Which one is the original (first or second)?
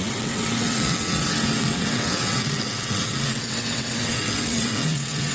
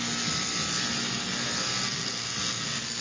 second